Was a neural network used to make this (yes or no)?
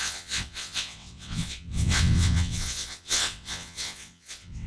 yes